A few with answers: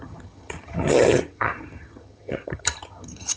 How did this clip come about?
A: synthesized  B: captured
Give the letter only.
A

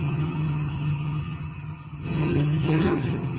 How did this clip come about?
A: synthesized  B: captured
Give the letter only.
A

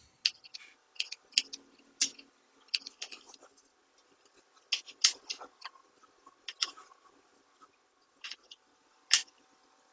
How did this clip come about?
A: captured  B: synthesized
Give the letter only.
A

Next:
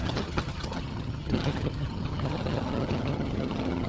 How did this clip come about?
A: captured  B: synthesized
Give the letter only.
B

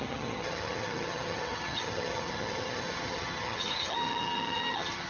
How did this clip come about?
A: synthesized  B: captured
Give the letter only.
A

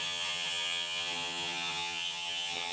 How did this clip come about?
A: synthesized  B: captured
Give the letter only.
A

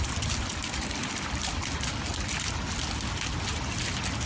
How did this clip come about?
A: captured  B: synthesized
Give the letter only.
A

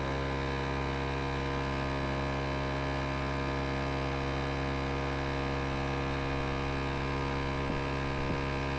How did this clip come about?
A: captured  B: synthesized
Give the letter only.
A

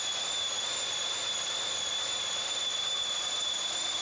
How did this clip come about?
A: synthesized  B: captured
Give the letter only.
B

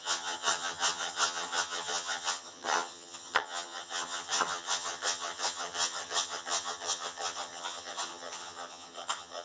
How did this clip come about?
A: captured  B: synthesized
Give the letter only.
B